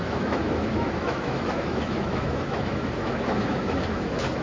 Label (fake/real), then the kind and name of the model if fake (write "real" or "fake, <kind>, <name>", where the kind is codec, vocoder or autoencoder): fake, autoencoder, DAC-VAE